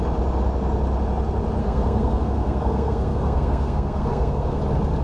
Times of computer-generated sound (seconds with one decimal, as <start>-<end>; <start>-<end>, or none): 1.6-4.6

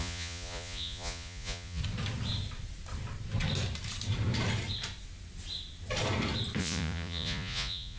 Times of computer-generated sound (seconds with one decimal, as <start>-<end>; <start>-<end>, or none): 0.0-1.8; 6.6-8.0

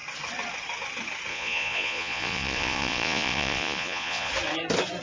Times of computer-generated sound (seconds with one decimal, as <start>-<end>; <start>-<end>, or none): 1.3-4.3